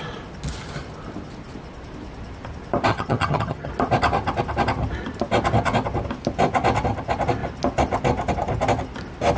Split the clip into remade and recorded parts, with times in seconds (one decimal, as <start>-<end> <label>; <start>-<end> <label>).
0.0-2.9 recorded; 2.9-3.7 remade; 3.7-9.4 recorded